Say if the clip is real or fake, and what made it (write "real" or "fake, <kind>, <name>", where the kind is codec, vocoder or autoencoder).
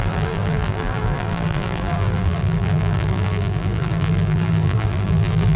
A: fake, vocoder, BigVGAN v2